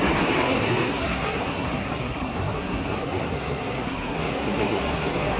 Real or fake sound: fake